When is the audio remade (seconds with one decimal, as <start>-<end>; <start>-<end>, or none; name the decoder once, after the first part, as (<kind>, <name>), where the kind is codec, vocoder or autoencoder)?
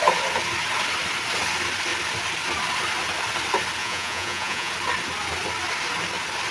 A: 3.8-4.7 (vocoder, Vocos)